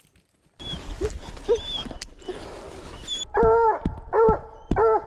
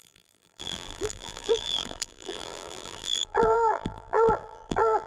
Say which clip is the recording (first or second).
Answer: first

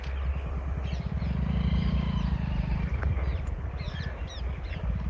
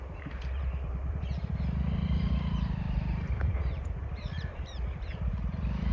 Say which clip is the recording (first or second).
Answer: first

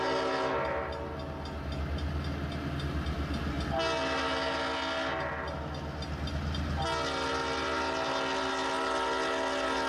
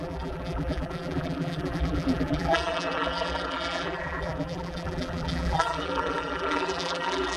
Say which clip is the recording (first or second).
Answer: first